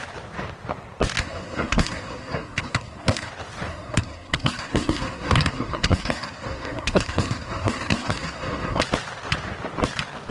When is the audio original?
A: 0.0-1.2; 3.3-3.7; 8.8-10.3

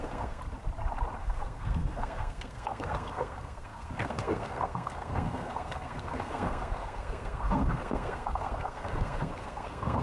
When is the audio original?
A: 0.4-1.2

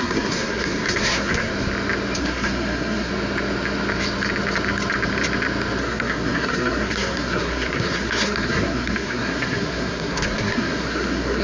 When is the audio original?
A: 1.5-2.2; 3.1-5.8